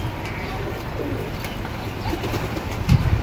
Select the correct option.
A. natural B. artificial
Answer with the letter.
A